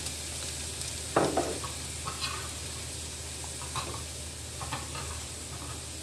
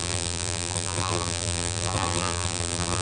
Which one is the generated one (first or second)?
second